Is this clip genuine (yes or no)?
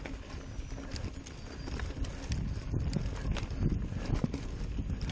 yes